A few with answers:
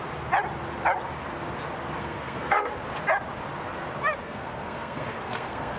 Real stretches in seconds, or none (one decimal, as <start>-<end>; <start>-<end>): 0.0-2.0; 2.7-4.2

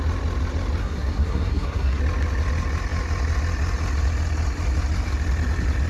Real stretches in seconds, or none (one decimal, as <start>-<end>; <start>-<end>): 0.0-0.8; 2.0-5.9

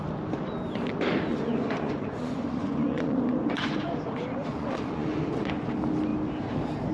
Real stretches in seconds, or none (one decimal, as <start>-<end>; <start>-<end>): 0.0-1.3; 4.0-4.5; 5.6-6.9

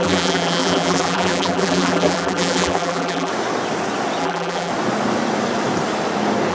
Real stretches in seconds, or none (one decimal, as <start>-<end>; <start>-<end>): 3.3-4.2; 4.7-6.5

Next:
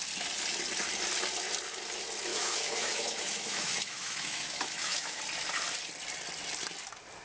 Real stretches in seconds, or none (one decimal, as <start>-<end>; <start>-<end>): 0.0-2.3; 5.2-7.2

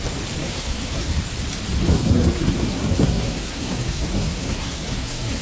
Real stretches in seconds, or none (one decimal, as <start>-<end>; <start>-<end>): 0.0-0.4; 1.2-1.9

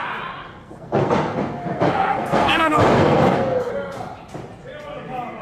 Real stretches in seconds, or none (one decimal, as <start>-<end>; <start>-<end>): 0.0-0.5; 3.7-5.4

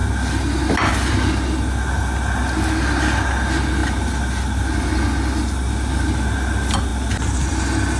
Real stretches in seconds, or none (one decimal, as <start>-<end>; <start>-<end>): 0.0-8.0